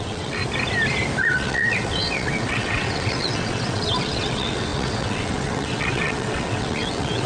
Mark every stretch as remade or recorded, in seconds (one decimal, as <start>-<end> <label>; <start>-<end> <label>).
0.0-0.4 remade; 0.4-1.2 recorded; 1.2-7.3 remade